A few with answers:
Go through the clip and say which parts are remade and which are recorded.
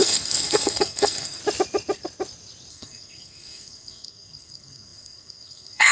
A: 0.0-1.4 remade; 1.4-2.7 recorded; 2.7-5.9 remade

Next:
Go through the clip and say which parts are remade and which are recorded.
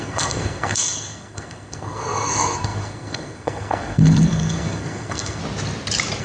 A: 0.0-5.4 remade; 5.4-6.2 recorded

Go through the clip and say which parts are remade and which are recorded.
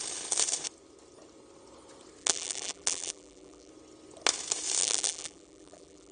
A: 0.0-2.2 recorded; 2.2-3.7 remade; 3.7-4.8 recorded; 4.8-6.1 remade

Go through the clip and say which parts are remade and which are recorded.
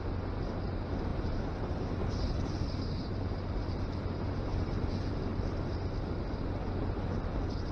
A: 0.0-1.1 recorded; 1.1-5.2 remade; 5.2-7.7 recorded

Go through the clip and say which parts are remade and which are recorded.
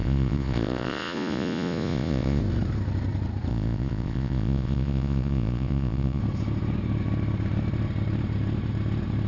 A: 0.0-2.4 remade; 2.4-3.5 recorded; 3.5-6.2 remade; 6.2-9.3 recorded